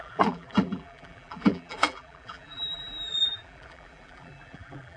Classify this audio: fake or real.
fake